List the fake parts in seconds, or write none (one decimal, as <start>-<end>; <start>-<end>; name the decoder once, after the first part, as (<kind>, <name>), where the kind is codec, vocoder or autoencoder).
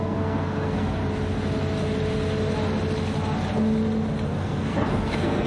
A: 0.0-1.0 (codec, SNAC); 4.3-5.5